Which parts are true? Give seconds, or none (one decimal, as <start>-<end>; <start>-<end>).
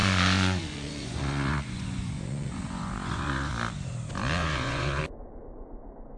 3.5-4.4; 5.0-6.2